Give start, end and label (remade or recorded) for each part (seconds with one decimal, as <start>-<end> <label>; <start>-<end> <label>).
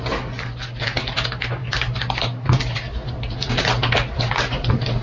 0.0-5.0 recorded